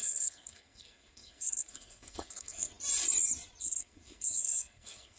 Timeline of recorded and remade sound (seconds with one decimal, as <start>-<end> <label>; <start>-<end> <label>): 0.0-2.7 remade; 2.7-3.6 recorded; 3.6-5.2 remade

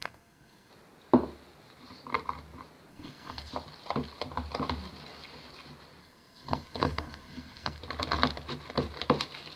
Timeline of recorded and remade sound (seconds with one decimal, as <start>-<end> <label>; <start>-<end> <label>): 0.0-0.7 remade; 0.7-2.9 recorded; 2.9-3.5 remade; 3.5-6.0 recorded; 6.0-7.8 remade; 7.8-9.6 recorded

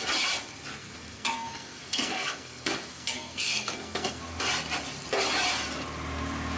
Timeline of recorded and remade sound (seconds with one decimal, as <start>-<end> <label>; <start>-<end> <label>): 0.0-0.8 recorded; 0.8-4.2 remade; 4.2-6.6 recorded